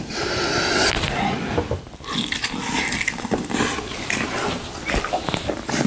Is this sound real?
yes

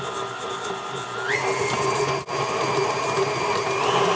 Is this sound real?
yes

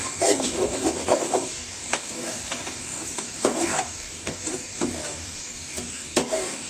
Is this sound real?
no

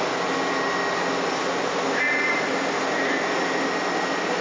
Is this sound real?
yes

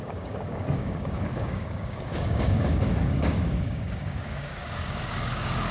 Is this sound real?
no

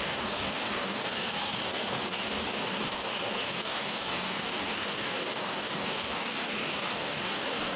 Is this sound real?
no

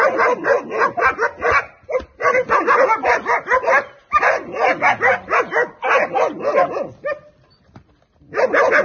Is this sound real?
yes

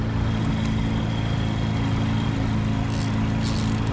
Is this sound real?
yes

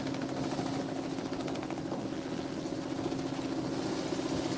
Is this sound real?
yes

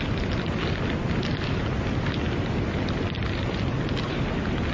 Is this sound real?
yes